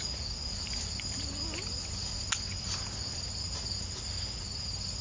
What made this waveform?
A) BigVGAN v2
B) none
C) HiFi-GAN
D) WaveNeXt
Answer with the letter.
B